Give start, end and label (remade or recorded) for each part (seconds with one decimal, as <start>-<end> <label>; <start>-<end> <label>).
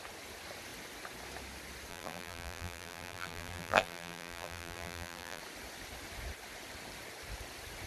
0.0-1.9 recorded; 1.9-5.4 remade; 5.4-7.9 recorded